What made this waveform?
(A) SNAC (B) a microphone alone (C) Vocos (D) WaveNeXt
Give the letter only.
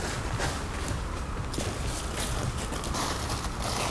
B